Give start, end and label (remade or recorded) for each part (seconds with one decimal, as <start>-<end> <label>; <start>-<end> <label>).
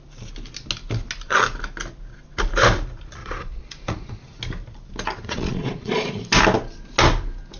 0.0-3.2 recorded; 3.2-4.2 remade; 4.2-5.2 recorded; 5.2-6.2 remade; 6.2-7.6 recorded